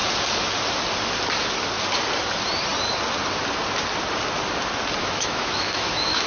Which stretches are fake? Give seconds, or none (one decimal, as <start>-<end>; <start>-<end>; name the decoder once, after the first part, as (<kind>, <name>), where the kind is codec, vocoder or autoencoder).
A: 5.0-6.3 (autoencoder, DAC-VAE)